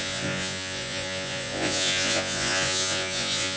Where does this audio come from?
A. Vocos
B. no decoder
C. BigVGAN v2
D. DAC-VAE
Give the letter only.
A